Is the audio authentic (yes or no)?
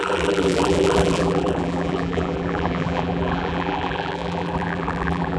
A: no